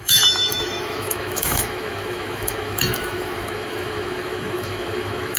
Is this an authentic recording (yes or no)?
no